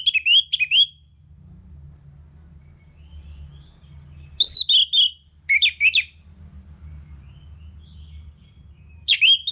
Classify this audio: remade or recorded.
recorded